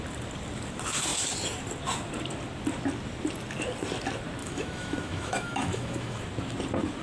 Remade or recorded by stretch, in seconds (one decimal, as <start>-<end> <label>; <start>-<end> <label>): 0.0-4.4 recorded; 4.4-6.2 remade; 6.2-7.0 recorded